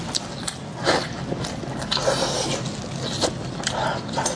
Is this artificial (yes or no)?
no